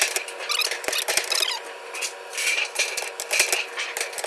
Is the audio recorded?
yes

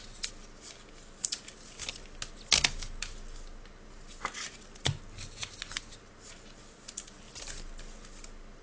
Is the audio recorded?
yes